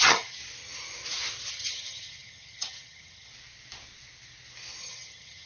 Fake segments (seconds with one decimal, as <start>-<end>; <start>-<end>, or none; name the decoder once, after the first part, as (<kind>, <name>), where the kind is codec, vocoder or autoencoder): 0.0-0.4 (vocoder, HiFi-GAN); 1.5-3.3; 4.8-5.5